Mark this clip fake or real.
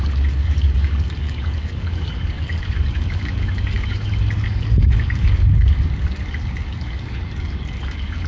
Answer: fake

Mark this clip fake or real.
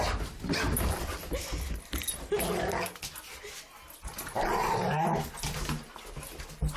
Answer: real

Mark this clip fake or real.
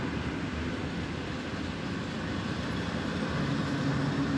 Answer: real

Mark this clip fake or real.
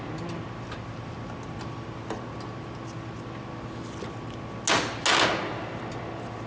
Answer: real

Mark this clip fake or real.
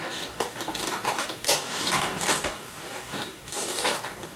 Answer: fake